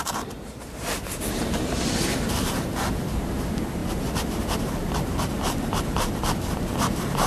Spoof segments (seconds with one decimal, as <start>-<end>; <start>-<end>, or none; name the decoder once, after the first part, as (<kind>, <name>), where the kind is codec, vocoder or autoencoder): 0.0-7.3 (vocoder, BigVGAN v2)